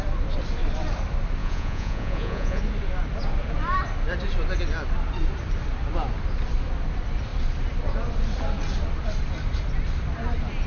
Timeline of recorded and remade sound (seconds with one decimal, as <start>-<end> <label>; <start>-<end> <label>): 0.0-1.4 recorded; 1.4-2.6 remade; 2.6-10.7 recorded